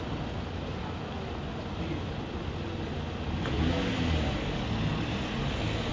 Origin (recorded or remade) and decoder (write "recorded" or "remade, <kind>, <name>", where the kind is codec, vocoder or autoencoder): recorded